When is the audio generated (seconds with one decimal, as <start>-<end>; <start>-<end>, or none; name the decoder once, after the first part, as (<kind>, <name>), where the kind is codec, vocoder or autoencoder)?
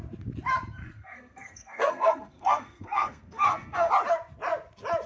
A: 0.8-3.9 (codec, SNAC)